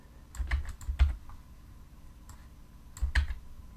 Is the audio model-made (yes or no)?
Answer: no